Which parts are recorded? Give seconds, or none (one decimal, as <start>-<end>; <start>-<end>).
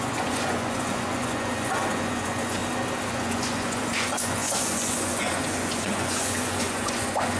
2.6-3.1